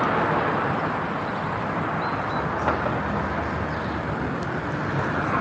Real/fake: real